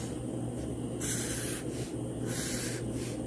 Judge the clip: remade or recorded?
recorded